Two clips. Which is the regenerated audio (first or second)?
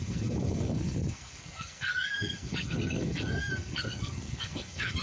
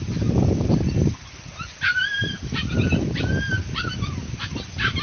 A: first